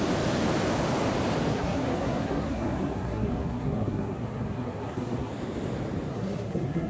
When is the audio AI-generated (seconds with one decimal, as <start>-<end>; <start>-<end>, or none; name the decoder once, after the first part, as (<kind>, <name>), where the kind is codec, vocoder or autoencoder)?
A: 1.5-5.3 (codec, SNAC); 6.1-6.9